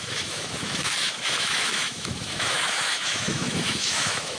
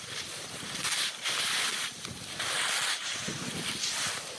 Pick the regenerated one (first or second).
first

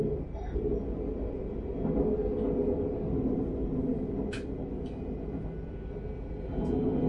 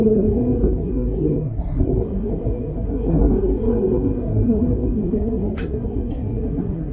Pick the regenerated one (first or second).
second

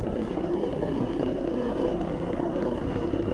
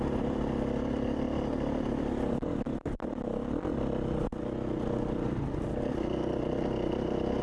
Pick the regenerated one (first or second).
first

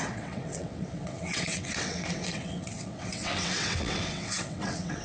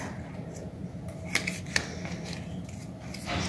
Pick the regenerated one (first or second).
first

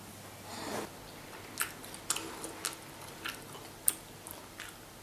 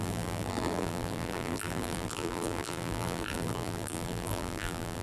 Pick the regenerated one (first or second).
second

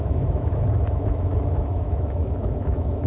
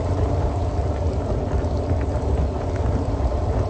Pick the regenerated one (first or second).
first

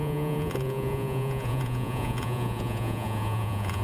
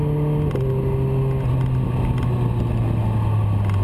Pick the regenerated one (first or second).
first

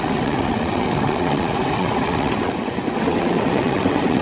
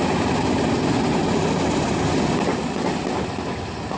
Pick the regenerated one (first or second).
first